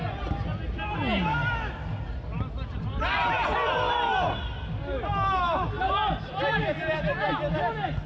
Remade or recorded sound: recorded